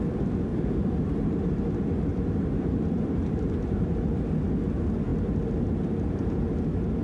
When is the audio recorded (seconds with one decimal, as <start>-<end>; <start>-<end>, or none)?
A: 0.0-0.5; 1.2-2.1; 4.2-7.0